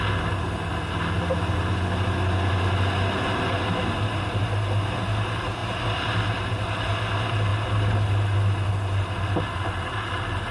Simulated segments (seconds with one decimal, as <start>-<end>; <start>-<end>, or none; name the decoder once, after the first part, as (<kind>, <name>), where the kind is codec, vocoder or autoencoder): none